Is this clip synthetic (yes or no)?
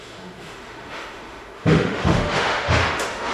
yes